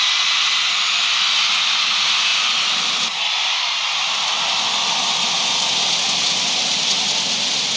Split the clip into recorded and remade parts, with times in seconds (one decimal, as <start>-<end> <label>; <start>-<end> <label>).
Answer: 0.0-7.8 recorded